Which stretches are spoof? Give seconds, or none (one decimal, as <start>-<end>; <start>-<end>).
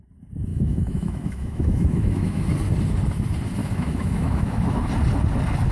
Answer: 0.5-2.5; 3.6-4.8